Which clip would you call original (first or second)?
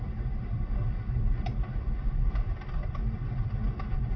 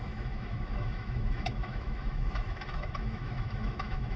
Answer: first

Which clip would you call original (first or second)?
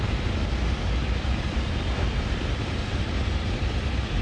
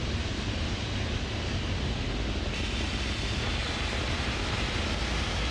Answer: second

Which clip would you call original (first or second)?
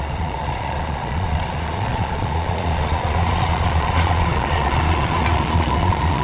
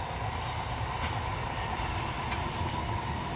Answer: second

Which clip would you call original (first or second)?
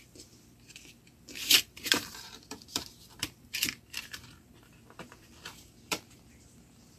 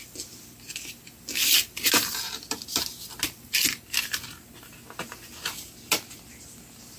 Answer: second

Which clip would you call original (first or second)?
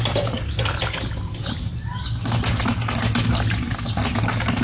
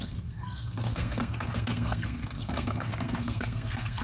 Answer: first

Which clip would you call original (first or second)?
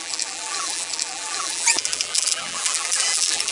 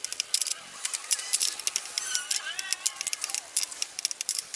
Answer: second